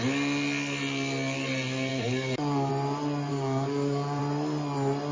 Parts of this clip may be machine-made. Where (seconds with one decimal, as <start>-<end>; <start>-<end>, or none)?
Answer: 1.9-2.7; 3.3-4.2